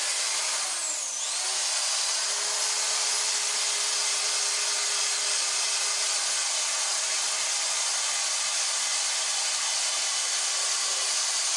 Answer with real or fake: real